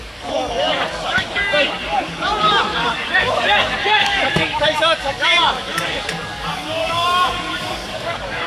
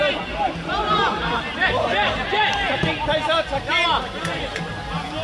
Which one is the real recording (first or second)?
second